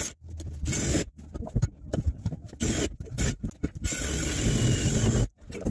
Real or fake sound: real